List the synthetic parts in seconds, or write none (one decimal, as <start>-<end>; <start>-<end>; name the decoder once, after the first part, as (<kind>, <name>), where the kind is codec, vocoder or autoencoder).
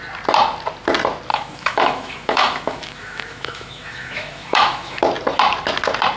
1.3-5.0 (autoencoder, DAC-VAE)